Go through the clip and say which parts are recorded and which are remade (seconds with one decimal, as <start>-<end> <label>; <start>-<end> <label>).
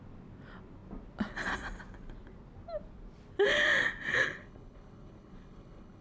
0.0-4.1 recorded; 4.1-6.0 remade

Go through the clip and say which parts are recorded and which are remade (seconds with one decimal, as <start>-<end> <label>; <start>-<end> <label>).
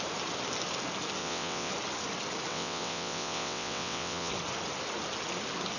0.0-1.2 recorded; 1.2-1.7 remade; 1.7-2.5 recorded; 2.5-4.3 remade; 4.3-5.8 recorded